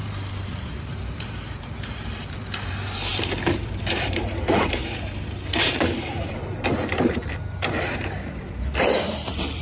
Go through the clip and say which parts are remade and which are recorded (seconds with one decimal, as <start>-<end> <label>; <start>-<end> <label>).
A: 0.0-4.8 remade; 4.8-5.4 recorded; 5.4-7.2 remade; 7.2-8.4 recorded; 8.4-9.6 remade